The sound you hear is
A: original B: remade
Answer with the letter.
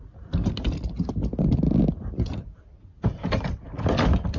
A